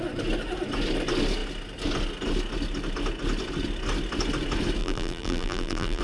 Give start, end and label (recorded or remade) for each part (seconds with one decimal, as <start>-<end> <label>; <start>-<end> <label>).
0.0-4.8 recorded; 4.8-6.0 remade